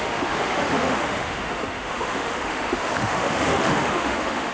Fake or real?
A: fake